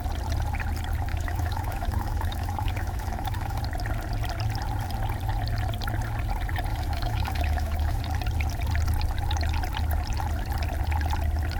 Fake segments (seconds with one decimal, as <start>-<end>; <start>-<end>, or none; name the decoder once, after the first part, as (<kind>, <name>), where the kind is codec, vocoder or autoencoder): 1.1-3.6 (autoencoder, DAC-VAE); 6.7-8.0